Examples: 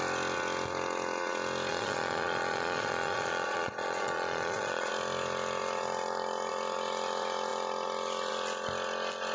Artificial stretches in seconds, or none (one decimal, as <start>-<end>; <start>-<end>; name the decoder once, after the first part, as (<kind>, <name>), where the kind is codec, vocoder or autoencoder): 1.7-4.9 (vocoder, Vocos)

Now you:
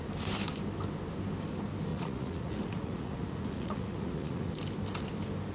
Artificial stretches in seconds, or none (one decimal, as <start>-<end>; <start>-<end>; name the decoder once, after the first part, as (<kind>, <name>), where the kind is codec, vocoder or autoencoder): 1.9-4.5 (vocoder, Vocos)

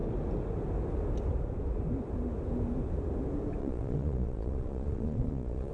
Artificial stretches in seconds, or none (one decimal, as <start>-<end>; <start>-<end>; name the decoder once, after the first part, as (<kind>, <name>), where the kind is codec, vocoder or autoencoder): 3.6-5.7 (vocoder, Vocos)

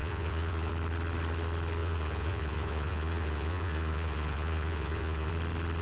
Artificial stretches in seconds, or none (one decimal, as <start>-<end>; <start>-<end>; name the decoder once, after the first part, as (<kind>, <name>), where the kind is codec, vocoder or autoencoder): 0.0-0.7 (vocoder, Vocos); 1.8-5.3

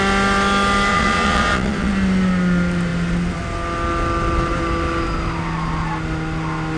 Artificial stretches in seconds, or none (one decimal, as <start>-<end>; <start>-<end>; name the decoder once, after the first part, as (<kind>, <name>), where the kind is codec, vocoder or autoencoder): 0.9-1.9 (vocoder, Vocos)